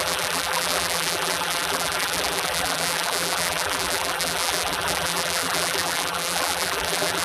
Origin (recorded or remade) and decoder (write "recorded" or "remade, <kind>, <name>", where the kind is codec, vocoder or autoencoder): remade, vocoder, BigVGAN v2